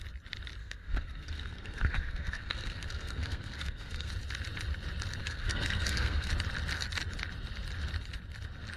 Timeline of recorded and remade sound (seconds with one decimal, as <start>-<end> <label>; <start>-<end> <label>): 0.0-0.6 recorded; 0.6-4.1 remade; 4.1-5.2 recorded; 5.2-6.3 remade; 6.3-8.8 recorded

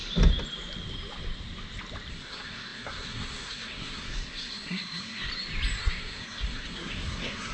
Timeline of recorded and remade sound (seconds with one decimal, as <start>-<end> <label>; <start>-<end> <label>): 0.0-2.1 recorded; 2.1-5.3 remade; 5.3-5.8 recorded; 5.8-7.5 remade